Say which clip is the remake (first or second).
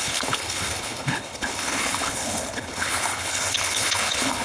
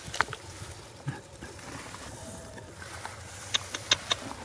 first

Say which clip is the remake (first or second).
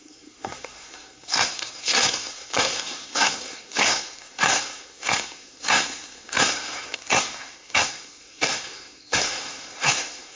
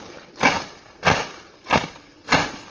first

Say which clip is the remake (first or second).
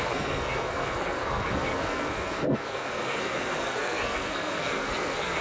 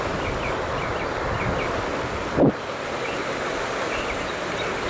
first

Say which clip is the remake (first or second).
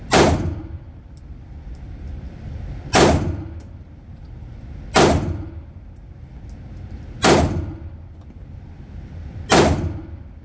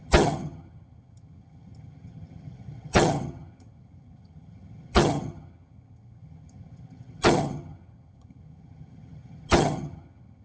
second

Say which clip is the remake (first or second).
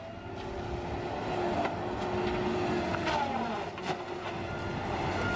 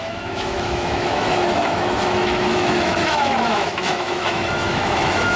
second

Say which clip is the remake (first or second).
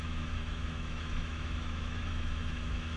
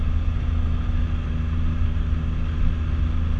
first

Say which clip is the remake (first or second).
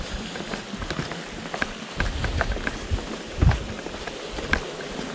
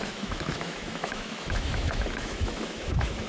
second